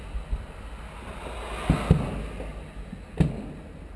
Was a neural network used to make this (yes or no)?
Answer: no